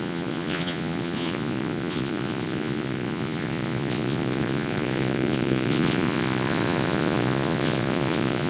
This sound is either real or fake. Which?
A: fake